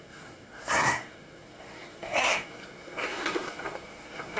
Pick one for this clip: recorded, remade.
remade